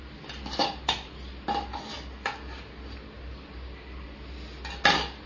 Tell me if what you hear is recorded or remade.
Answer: recorded